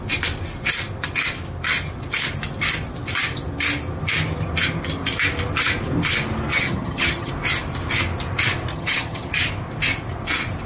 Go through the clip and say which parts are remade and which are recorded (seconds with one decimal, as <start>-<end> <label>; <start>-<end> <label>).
0.0-6.5 recorded; 6.5-7.3 remade; 7.3-8.7 recorded; 8.7-9.3 remade; 9.3-10.7 recorded